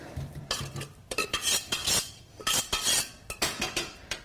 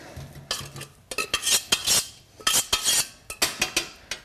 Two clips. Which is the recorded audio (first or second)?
second